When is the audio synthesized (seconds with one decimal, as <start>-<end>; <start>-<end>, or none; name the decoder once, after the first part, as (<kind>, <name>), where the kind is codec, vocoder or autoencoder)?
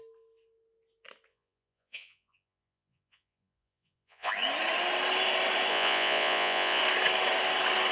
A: 1.3-4.3 (vocoder, Vocos); 5.7-6.8